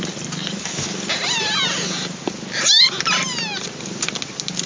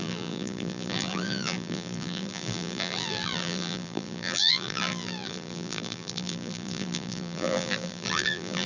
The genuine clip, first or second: first